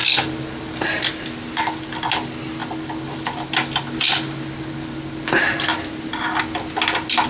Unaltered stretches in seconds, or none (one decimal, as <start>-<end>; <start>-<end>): 0.0-7.3

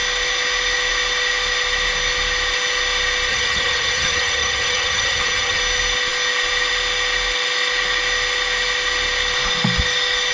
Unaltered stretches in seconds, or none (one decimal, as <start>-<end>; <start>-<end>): 0.0-3.3; 5.6-10.3

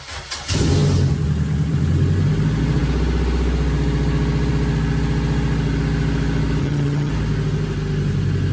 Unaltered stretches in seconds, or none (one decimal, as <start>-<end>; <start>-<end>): 0.0-6.6; 7.1-8.5

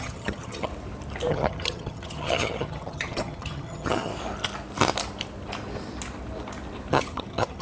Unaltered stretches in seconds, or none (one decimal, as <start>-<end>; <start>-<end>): 0.7-1.3; 4.1-6.9